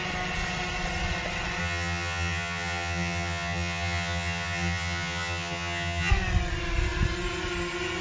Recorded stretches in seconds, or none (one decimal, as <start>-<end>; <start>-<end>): 0.0-1.6; 6.1-8.0